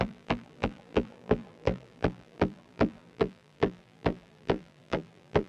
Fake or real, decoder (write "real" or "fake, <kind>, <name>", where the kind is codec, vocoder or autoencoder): fake, vocoder, BigVGAN v2